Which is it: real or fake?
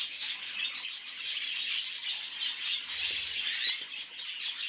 real